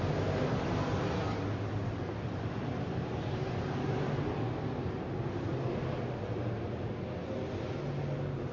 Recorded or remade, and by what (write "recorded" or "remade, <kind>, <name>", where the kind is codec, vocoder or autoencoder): recorded